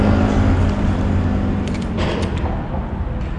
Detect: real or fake real